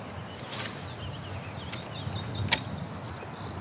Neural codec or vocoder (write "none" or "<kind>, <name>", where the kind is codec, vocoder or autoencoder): none